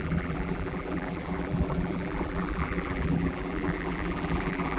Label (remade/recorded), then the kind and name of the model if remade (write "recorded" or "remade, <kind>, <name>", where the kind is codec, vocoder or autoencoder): remade, vocoder, BigVGAN v2